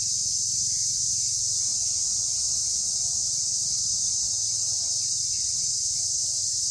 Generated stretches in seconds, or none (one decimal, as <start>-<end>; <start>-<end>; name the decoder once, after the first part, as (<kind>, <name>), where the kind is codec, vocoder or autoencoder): none